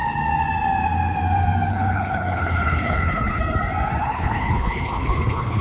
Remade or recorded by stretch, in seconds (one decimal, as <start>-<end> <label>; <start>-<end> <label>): 0.0-1.7 recorded; 1.7-3.4 remade; 3.4-4.0 recorded; 4.0-5.6 remade

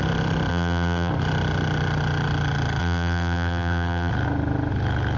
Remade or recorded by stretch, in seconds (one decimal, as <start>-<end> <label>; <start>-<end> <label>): 0.0-0.5 recorded; 0.5-1.1 remade; 1.1-2.8 recorded; 2.8-4.1 remade; 4.1-5.2 recorded

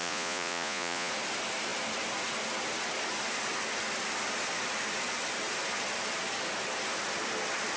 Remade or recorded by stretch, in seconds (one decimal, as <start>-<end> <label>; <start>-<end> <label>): 0.0-1.1 remade; 1.1-7.8 recorded

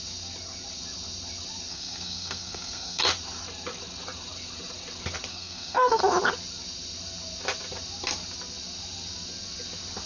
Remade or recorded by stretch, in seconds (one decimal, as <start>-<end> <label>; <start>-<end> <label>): 0.0-1.7 recorded; 1.7-3.0 remade; 3.0-5.3 recorded; 5.3-6.0 remade; 6.0-10.1 recorded

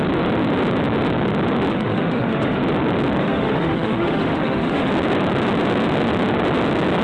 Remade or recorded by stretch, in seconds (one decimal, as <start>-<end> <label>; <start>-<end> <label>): 0.0-1.7 recorded; 1.7-2.6 remade; 2.6-3.2 recorded; 3.2-4.9 remade; 4.9-7.0 recorded

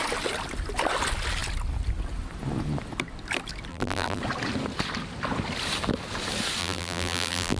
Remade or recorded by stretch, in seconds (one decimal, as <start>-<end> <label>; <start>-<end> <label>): 0.0-3.7 recorded; 3.7-4.2 remade; 4.2-6.6 recorded; 6.6-7.6 remade

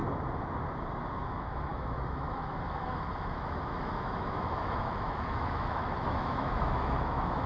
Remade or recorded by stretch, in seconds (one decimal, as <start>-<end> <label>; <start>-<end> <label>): 0.0-1.2 recorded; 1.2-7.5 remade

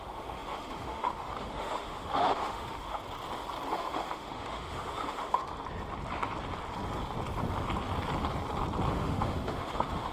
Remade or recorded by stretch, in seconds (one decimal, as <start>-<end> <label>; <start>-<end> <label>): 0.0-3.0 remade; 3.0-3.7 recorded; 3.7-5.4 remade; 5.4-8.9 recorded; 8.9-10.1 remade